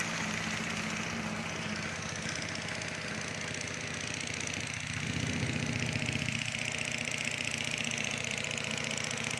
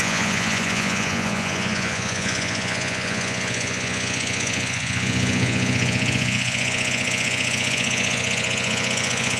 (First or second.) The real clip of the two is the first